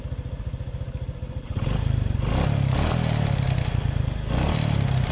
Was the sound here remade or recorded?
recorded